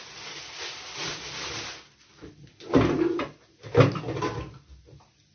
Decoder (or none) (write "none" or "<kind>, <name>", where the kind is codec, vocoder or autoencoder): none